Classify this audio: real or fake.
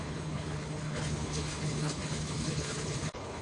fake